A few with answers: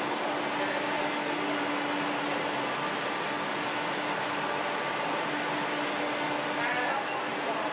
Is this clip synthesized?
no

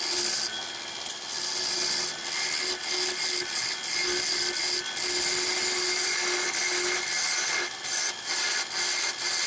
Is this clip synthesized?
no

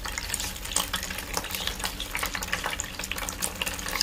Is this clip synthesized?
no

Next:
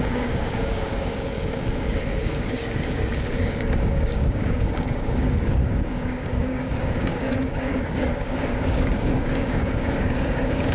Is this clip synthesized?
yes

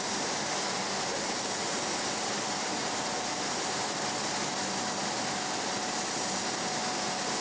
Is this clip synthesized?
no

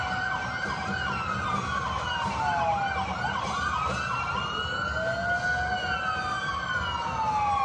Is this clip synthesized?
no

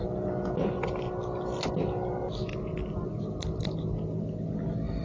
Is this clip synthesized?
no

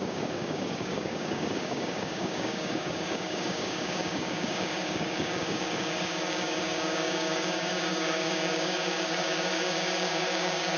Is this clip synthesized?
yes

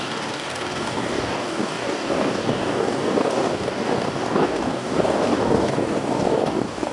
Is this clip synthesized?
yes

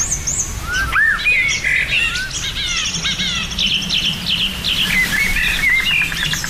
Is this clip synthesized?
no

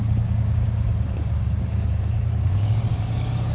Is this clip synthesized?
yes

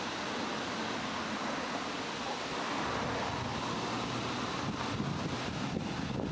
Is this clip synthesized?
no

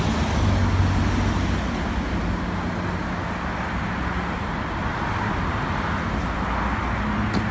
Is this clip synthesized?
no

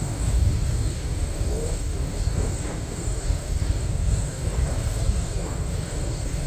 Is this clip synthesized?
yes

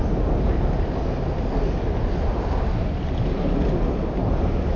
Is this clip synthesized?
no